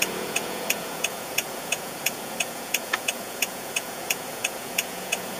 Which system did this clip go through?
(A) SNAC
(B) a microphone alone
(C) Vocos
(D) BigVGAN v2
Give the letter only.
C